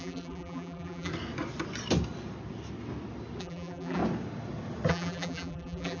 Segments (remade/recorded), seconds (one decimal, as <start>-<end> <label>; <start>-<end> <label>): 0.0-1.1 remade; 1.1-3.4 recorded; 3.4-4.0 remade; 4.0-4.9 recorded; 4.9-6.0 remade